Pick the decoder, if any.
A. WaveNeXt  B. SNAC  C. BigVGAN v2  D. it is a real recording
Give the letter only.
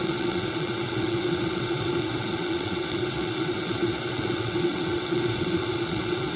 A